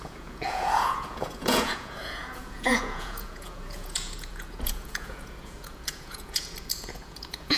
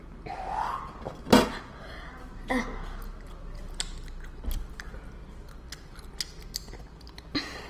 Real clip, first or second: second